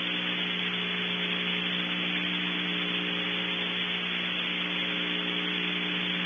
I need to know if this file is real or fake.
real